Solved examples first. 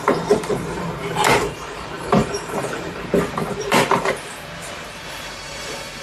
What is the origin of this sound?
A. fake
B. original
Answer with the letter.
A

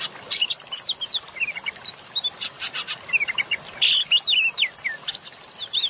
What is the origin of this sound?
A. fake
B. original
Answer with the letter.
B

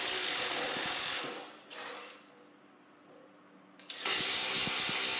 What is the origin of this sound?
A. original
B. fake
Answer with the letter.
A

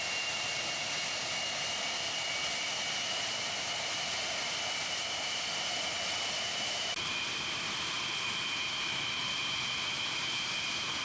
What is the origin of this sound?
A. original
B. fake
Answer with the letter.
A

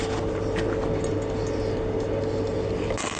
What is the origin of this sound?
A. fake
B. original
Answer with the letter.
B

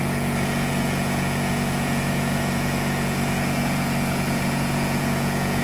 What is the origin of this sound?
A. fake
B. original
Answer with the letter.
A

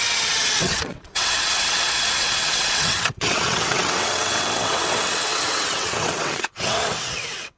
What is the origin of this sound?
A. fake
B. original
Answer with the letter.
A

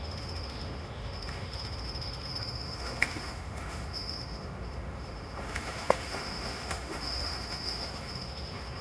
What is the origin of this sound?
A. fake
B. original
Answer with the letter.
A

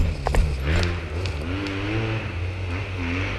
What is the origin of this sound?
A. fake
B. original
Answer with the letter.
B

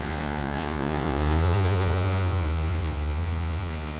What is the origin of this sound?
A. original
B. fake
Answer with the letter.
B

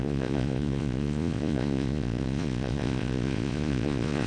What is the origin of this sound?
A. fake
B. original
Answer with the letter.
A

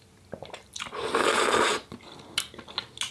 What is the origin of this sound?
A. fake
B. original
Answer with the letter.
B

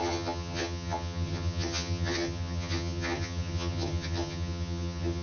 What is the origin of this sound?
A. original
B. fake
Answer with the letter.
B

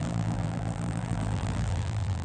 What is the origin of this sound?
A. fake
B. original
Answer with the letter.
A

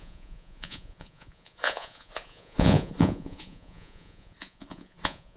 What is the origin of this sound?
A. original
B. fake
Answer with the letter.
B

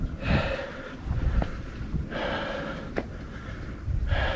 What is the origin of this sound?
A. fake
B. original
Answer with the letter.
B